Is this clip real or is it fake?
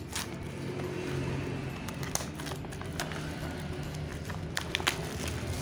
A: real